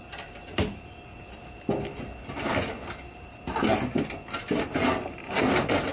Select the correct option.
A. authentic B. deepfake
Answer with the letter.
A